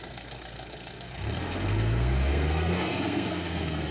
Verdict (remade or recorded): remade